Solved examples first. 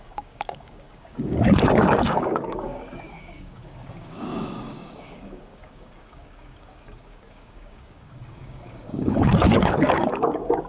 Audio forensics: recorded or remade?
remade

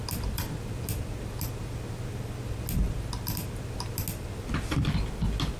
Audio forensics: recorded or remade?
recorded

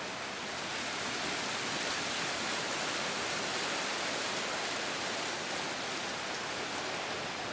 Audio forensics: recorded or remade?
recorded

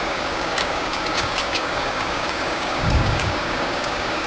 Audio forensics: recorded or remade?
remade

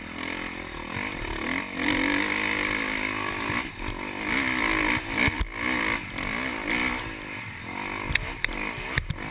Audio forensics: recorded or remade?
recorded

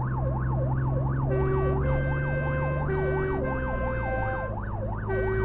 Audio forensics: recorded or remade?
recorded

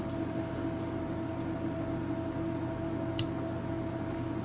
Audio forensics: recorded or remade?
recorded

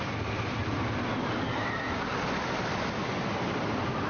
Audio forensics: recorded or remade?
recorded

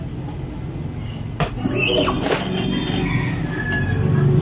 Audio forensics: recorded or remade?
recorded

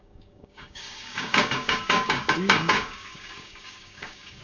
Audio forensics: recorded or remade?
remade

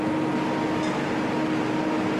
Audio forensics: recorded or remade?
recorded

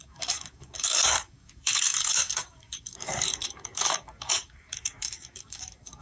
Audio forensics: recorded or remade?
remade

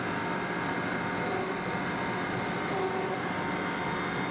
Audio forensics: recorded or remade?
recorded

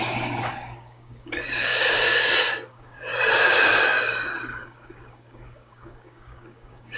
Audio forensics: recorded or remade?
remade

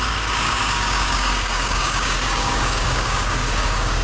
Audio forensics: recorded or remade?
remade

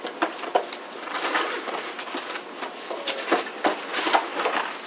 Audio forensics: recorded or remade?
recorded